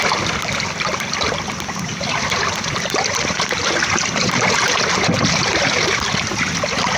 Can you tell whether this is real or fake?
fake